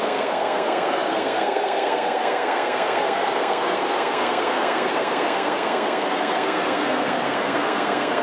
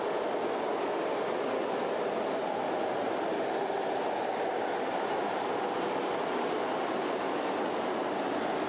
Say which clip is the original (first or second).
second